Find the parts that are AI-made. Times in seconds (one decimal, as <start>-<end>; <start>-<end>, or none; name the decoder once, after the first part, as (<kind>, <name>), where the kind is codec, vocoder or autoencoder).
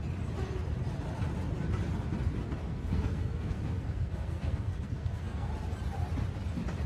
2.6-5.5 (codec, SNAC)